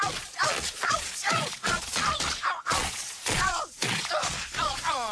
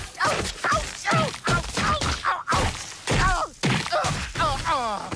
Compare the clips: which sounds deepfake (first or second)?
first